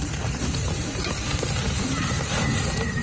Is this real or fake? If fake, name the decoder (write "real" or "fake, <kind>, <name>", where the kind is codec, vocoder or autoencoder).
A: fake, vocoder, BigVGAN v2